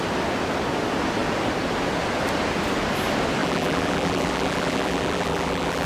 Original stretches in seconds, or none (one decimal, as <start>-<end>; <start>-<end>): 0.0-3.4